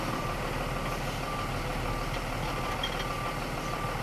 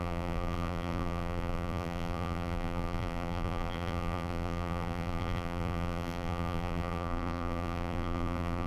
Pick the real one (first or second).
first